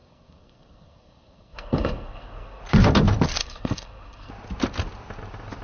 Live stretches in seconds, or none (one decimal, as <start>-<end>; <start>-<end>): 2.6-3.4; 4.3-5.6